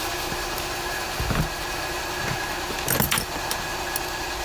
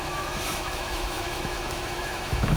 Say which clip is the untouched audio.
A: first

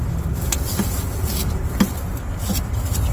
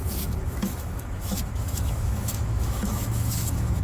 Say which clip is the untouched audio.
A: first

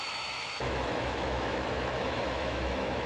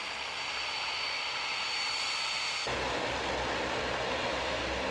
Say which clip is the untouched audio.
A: second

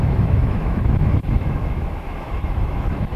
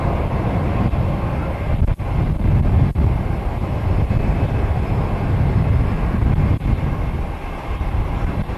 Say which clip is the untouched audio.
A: second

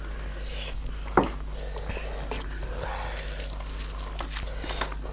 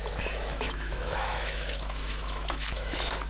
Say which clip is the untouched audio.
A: first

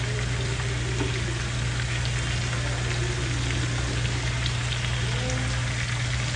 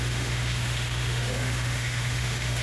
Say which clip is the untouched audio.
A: first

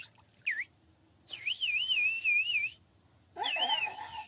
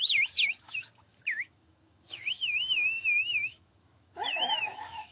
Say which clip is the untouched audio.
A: first